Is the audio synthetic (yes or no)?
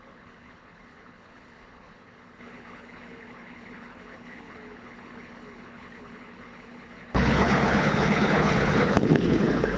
yes